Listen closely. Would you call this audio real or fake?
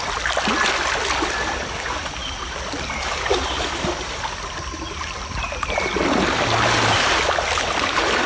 real